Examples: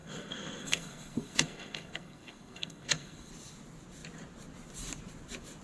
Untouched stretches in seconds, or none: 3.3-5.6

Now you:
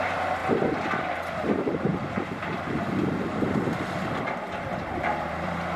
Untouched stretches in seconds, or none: none

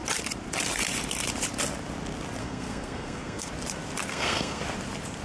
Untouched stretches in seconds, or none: 0.0-2.4; 3.5-4.1; 4.6-5.2

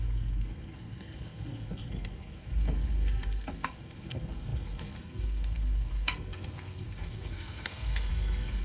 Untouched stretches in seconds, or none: none

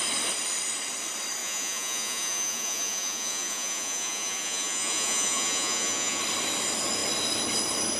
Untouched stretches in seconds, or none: 0.0-1.4; 6.2-8.0

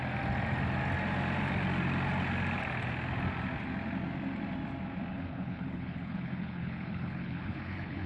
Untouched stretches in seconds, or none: 0.0-5.1

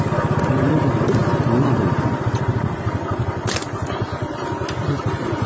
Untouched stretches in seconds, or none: 0.0-5.5

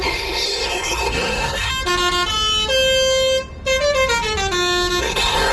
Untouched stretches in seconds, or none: 1.7-5.0